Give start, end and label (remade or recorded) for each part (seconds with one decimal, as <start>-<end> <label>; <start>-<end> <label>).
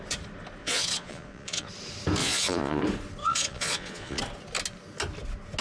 0.0-0.6 recorded; 0.6-1.7 remade; 1.7-2.2 recorded; 2.2-2.8 remade; 2.8-3.2 recorded; 3.2-4.2 remade; 4.2-5.6 recorded